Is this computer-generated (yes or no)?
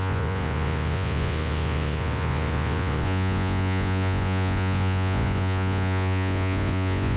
yes